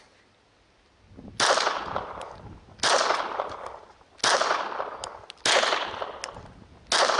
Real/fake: real